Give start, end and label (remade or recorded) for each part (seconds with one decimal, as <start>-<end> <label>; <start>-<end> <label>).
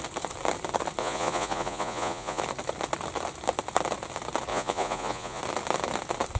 0.0-1.0 recorded; 1.0-2.4 remade; 2.4-4.5 recorded; 4.5-5.4 remade; 5.4-6.4 recorded